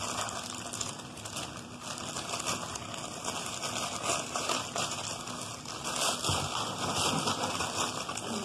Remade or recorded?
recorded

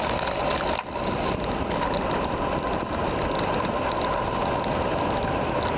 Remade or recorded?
recorded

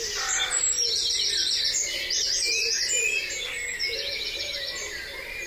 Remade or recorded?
recorded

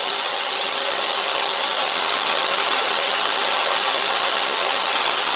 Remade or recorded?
remade